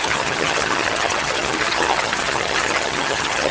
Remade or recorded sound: remade